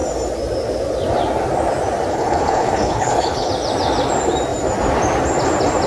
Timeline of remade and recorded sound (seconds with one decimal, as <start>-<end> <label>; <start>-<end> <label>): 0.0-2.1 recorded; 2.1-3.5 remade; 3.5-5.9 recorded